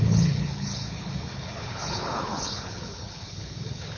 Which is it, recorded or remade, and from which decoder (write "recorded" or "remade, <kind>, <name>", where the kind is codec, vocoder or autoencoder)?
remade, codec, HILCodec